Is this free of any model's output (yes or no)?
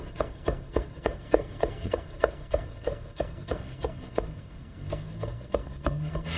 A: no